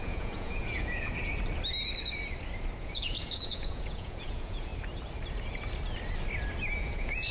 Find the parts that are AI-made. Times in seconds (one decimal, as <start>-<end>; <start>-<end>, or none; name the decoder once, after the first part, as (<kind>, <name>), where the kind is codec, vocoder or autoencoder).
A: 0.0-1.1 (vocoder, Vocos); 2.8-4.7; 6.8-7.3